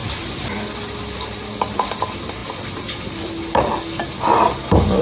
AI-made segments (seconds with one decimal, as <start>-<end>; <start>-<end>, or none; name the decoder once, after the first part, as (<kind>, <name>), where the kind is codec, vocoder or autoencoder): 0.0-1.0 (vocoder, BigVGAN v2); 4.0-4.6